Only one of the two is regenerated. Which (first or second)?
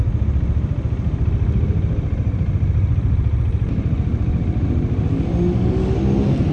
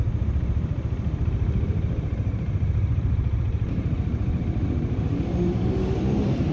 second